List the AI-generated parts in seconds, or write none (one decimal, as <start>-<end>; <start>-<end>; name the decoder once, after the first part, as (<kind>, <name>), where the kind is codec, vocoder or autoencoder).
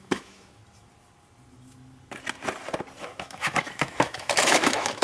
0.0-0.6 (autoencoder, DAC-VAE); 3.0-5.0